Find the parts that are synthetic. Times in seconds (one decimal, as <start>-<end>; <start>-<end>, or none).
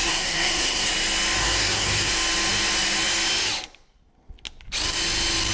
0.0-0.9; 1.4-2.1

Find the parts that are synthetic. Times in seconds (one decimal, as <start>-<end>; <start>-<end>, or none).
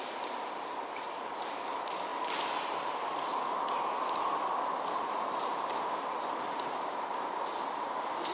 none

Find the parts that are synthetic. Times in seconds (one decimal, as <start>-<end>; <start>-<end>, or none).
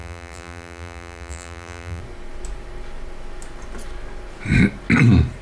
0.0-2.0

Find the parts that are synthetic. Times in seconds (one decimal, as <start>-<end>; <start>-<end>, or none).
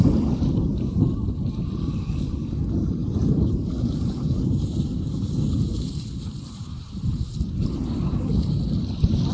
0.7-1.3; 3.0-7.3